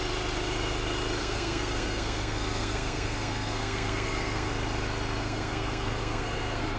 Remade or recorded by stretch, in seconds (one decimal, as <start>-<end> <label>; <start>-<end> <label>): 0.0-1.2 recorded; 1.2-4.5 remade; 4.5-5.2 recorded; 5.2-6.8 remade